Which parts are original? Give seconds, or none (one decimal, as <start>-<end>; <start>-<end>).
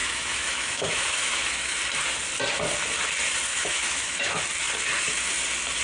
1.8-3.5; 4.4-5.8